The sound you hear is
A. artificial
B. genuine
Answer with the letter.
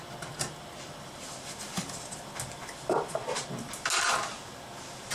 B